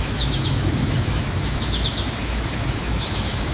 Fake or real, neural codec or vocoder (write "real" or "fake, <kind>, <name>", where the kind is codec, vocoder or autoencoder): fake, autoencoder, DAC-VAE